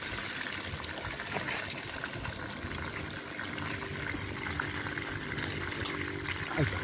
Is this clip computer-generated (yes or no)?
no